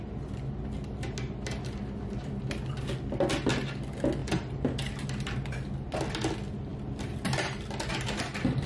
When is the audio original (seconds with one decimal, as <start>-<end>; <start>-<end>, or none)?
0.0-4.2; 5.7-6.7; 7.9-8.7